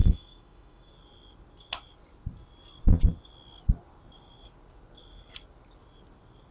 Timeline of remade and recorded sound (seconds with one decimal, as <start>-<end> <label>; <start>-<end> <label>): 0.0-0.9 remade; 0.9-6.5 recorded